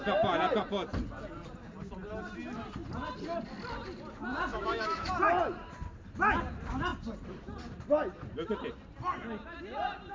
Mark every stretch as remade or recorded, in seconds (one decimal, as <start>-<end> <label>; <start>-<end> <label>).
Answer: 0.0-4.5 recorded; 4.5-5.1 remade; 5.1-10.1 recorded